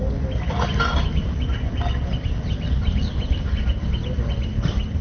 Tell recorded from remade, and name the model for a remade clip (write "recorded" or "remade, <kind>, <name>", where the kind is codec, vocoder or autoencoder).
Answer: recorded